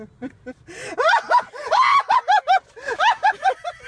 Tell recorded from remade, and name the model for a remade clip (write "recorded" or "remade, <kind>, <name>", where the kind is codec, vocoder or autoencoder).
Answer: recorded